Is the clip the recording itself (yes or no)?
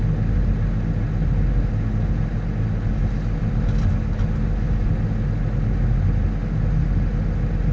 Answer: yes